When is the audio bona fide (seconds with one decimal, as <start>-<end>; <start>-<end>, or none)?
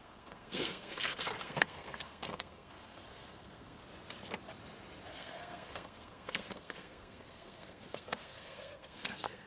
3.8-5.1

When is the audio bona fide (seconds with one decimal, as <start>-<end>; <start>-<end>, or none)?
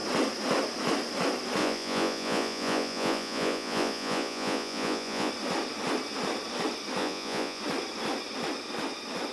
0.0-1.6; 5.3-7.0; 7.6-9.3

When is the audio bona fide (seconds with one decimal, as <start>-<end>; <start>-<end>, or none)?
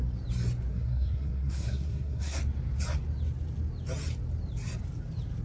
0.0-0.7; 2.4-5.4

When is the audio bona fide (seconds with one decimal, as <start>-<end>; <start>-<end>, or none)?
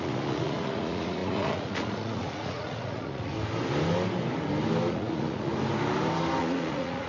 3.3-4.9; 5.5-6.4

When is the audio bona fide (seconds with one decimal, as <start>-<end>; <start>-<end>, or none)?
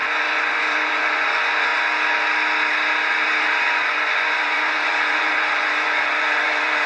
1.7-3.7